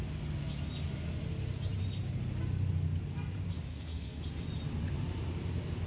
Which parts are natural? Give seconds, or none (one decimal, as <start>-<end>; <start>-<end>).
0.0-3.7; 4.2-5.9